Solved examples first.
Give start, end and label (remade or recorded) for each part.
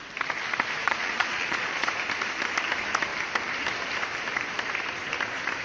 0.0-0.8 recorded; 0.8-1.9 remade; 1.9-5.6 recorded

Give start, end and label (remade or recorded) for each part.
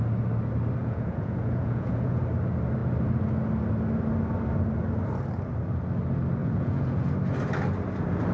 0.0-0.8 recorded; 0.8-2.2 remade; 2.2-6.4 recorded; 6.4-7.1 remade; 7.1-8.3 recorded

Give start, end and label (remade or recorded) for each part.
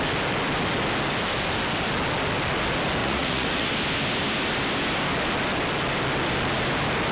0.0-3.0 recorded; 3.0-3.7 remade; 3.7-7.1 recorded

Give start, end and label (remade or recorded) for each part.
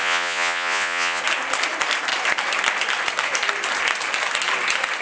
0.0-1.2 remade; 1.2-5.0 recorded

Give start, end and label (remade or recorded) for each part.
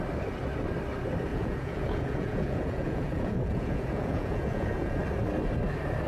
0.0-1.3 recorded; 1.3-5.0 remade; 5.0-6.1 recorded